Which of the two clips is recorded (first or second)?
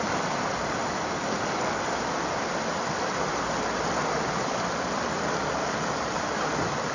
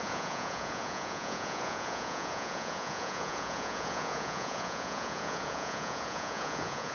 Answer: first